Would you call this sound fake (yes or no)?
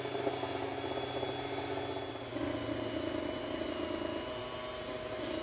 no